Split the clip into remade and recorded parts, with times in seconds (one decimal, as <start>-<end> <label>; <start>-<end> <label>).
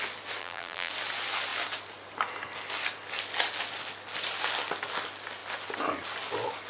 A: 0.0-0.4 recorded; 0.4-0.9 remade; 0.9-6.7 recorded